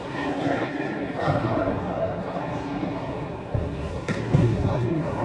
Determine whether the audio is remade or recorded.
remade